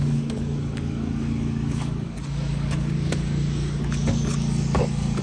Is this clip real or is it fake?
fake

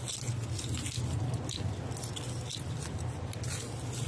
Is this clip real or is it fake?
real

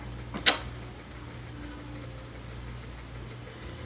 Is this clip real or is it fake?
real